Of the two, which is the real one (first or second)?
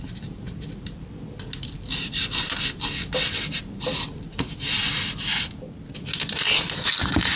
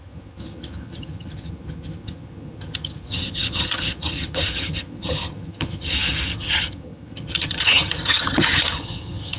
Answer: first